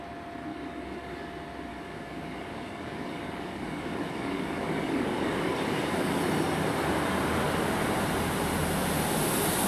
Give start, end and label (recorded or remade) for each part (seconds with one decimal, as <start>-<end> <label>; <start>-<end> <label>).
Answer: 0.0-0.5 recorded; 0.5-1.2 remade; 1.2-1.7 recorded; 1.7-6.2 remade; 6.2-9.7 recorded